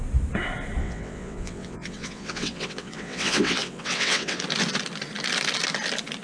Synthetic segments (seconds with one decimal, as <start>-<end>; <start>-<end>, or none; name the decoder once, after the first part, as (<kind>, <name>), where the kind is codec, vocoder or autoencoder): 0.8-4.4 (vocoder, WaveNeXt)

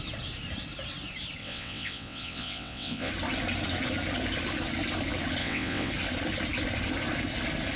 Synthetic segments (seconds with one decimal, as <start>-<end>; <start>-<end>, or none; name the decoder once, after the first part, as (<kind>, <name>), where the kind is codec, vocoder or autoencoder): 1.4-3.1 (vocoder, WaveNeXt); 5.4-5.9

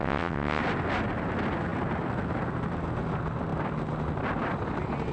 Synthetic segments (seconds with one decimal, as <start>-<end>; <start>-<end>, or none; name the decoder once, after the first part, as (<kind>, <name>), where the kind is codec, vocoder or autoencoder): 0.0-0.6 (vocoder, WaveNeXt)

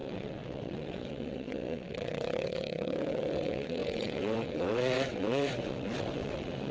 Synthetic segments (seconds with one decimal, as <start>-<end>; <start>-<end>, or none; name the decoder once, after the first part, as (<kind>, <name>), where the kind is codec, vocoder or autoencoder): 0.0-6.7 (vocoder, WaveNeXt)

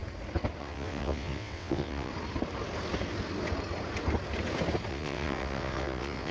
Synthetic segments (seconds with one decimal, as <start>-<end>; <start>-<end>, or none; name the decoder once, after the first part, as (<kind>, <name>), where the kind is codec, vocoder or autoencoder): 0.6-2.1 (vocoder, WaveNeXt); 4.9-6.3

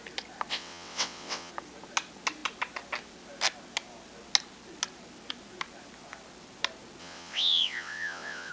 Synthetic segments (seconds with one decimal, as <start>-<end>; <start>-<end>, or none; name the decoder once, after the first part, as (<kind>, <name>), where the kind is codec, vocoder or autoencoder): 0.5-1.5 (vocoder, WaveNeXt); 7.0-8.5

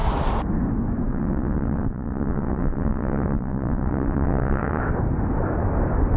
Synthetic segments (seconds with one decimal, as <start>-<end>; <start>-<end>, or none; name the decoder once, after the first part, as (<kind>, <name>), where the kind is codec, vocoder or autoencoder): 1.1-4.8 (vocoder, WaveNeXt)